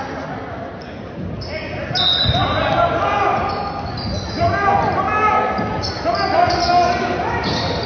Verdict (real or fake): real